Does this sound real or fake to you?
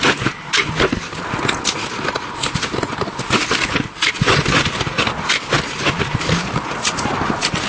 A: real